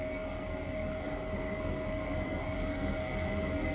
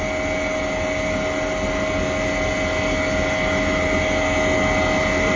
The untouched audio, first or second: second